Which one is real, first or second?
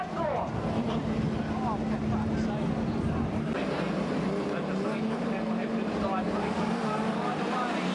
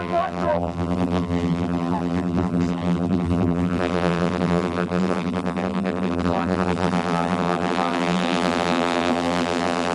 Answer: first